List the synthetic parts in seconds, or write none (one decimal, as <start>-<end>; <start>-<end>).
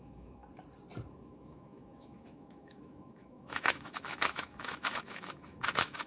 0.0-0.4; 1.1-6.1